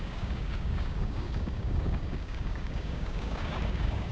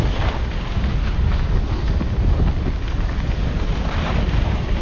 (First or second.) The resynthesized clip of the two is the first